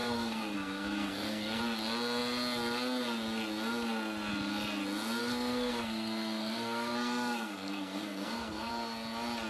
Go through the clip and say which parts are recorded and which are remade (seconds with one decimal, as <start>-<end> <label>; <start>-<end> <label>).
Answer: 0.0-1.6 remade; 1.6-5.2 recorded; 5.2-8.7 remade; 8.7-9.5 recorded